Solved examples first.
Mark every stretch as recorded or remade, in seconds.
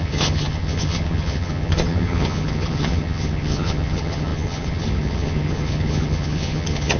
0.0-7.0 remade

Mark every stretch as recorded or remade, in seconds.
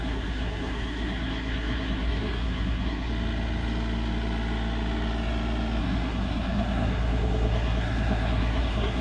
0.0-3.1 remade; 3.1-5.8 recorded; 5.8-9.0 remade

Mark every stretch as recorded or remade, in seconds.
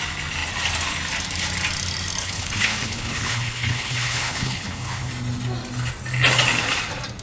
0.0-2.2 recorded; 2.2-5.1 remade; 5.1-7.2 recorded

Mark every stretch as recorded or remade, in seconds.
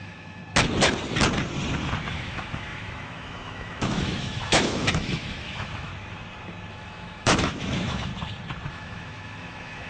0.0-0.4 remade; 0.4-2.1 recorded; 2.1-5.9 remade; 5.9-6.7 recorded; 6.7-8.1 remade; 8.1-8.7 recorded; 8.7-9.9 remade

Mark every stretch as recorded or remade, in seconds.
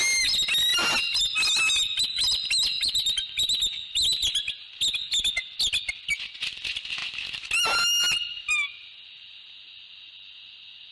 0.0-10.9 recorded